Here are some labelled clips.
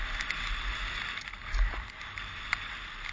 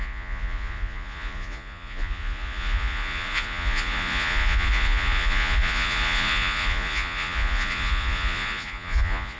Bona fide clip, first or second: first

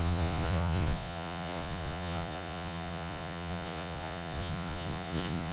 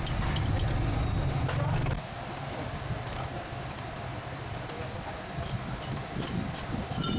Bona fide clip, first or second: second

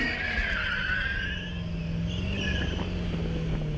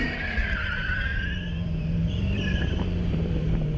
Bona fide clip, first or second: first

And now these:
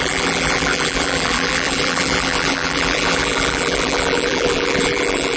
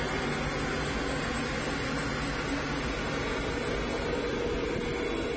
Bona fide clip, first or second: second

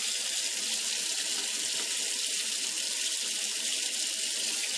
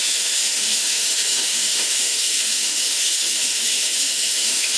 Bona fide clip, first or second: first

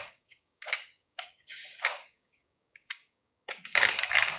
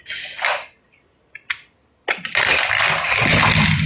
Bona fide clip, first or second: second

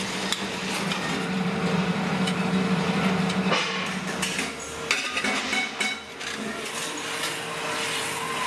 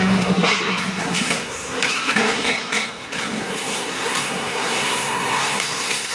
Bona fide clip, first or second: first